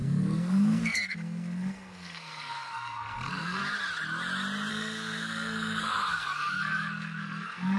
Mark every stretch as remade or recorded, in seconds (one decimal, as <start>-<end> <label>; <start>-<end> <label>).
0.0-3.6 remade; 3.6-4.7 recorded; 4.7-7.8 remade